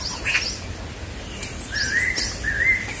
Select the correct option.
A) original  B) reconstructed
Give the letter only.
A